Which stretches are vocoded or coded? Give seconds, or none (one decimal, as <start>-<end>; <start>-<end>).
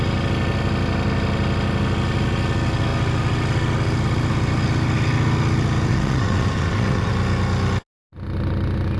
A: 5.9-7.1